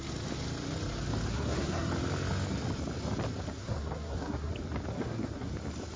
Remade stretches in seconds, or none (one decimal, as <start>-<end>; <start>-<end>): 1.3-1.9; 3.6-4.5; 4.9-5.5